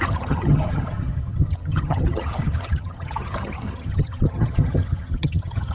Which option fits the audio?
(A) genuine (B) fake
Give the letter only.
B